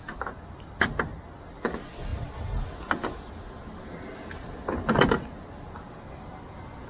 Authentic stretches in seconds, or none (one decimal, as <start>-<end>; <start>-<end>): 0.0-6.9